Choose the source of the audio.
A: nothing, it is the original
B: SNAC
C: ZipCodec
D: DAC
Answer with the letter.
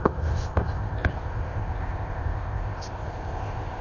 C